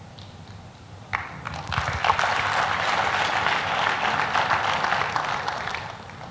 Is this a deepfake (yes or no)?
no